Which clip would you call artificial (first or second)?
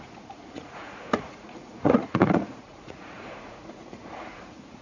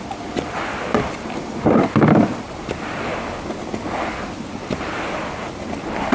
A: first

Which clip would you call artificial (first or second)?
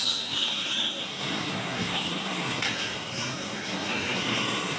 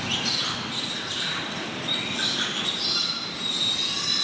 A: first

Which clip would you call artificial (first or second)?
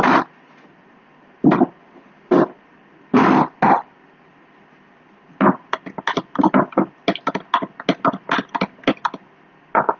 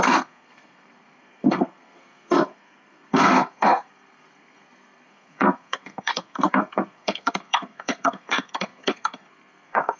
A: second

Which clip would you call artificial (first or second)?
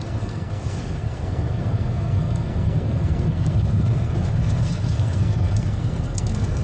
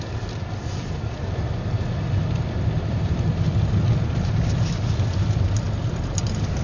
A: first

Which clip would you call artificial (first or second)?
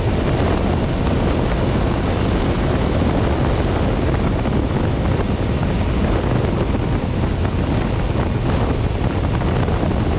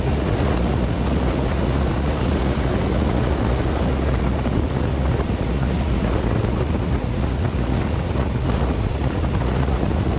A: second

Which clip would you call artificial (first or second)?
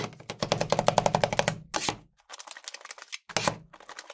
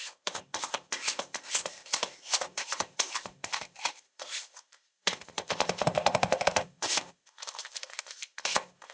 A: second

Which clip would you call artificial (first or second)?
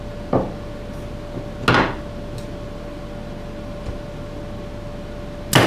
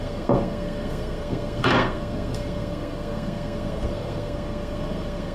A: second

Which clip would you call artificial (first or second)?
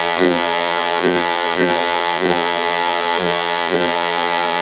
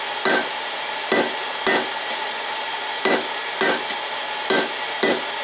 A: first